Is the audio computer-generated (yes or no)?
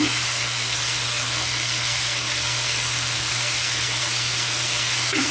yes